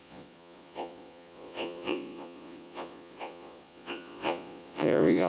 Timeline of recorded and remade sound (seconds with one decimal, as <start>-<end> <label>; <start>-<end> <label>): 0.0-5.3 remade